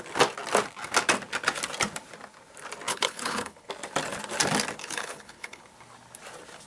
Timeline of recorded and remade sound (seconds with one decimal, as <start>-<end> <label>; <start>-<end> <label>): 0.0-2.9 recorded; 2.9-3.7 remade; 3.7-4.8 recorded; 4.8-5.6 remade; 5.6-6.7 recorded